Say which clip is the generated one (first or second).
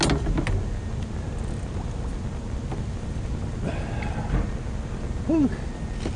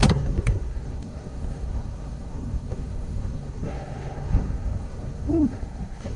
second